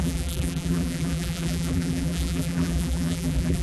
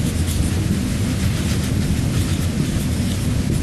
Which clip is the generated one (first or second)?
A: first